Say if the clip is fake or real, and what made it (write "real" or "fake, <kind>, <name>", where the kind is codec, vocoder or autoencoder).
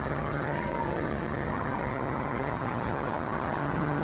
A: fake, vocoder, HiFi-GAN